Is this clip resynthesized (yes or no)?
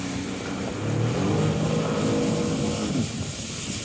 no